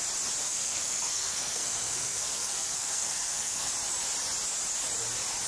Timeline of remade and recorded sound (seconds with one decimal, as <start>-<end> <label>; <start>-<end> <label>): 0.0-0.4 recorded; 0.4-3.7 remade; 3.7-5.5 recorded